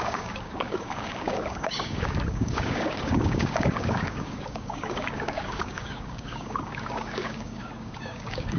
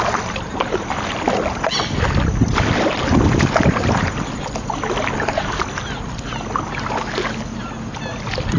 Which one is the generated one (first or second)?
first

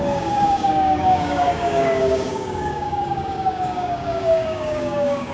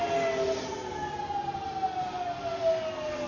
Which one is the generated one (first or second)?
first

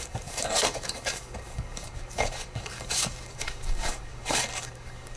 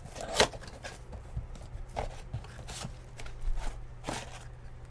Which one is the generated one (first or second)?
first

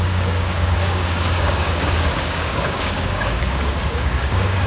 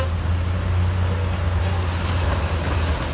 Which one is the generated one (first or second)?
first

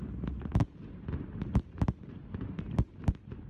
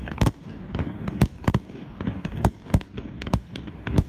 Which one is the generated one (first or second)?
second